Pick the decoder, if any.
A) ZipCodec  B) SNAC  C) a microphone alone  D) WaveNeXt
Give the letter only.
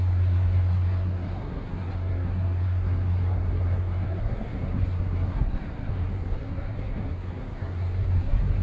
B